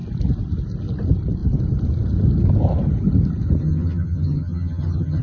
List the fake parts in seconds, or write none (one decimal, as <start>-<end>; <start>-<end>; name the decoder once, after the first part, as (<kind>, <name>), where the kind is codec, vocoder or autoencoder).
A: 3.6-5.2 (vocoder, HiFi-GAN)